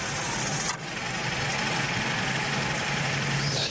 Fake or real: real